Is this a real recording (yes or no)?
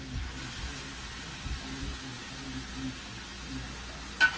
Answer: yes